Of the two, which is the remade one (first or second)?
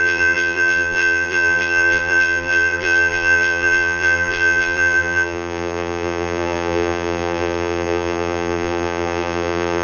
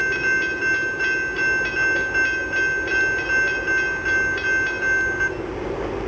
first